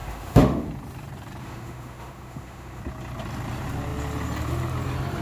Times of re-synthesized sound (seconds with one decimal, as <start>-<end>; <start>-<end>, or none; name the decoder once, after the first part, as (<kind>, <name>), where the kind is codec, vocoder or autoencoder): 0.0-0.7 (autoencoder, DAC-VAE); 1.4-2.8

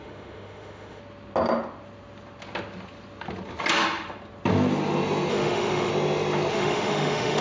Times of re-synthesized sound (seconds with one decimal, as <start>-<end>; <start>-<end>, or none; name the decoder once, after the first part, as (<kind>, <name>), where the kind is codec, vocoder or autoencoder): 0.0-1.0 (autoencoder, DAC-VAE); 5.3-5.9; 6.5-7.4

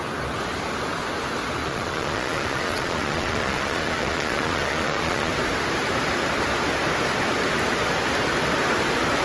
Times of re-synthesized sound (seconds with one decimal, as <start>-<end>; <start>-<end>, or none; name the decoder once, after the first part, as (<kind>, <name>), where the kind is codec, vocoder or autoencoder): 1.6-5.3 (vocoder, Vocos)

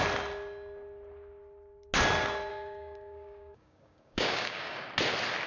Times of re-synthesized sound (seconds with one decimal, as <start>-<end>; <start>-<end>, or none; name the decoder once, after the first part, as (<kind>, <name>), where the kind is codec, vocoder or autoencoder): 2.5-4.9 (codec, DAC)